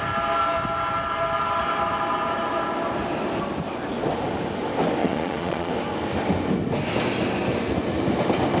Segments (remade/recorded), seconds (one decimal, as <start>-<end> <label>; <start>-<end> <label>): 0.0-5.0 recorded; 5.0-5.7 remade; 5.7-8.6 recorded